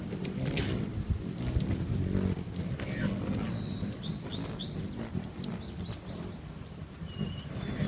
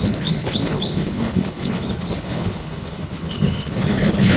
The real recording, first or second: first